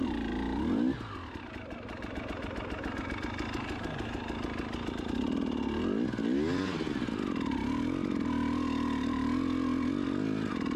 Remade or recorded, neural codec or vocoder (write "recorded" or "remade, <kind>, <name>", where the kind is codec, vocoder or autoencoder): recorded